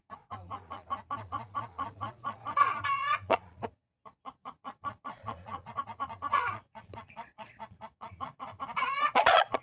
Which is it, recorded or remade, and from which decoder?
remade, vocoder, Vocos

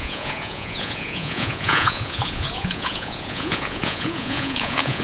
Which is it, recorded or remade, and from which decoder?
remade, vocoder, Vocos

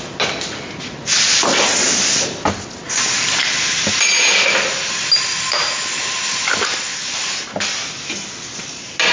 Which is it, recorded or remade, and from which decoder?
recorded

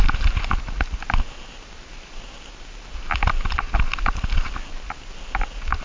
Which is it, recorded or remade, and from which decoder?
recorded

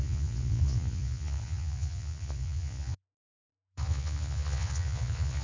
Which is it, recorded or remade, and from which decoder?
remade, vocoder, Vocos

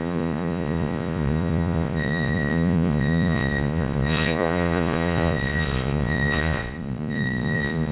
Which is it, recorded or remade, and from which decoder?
remade, vocoder, Vocos